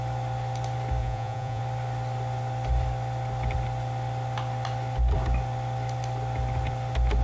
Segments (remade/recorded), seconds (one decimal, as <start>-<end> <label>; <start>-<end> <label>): 0.0-1.0 recorded; 1.0-1.6 remade; 1.6-7.2 recorded